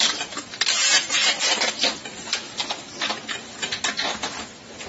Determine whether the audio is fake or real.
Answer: real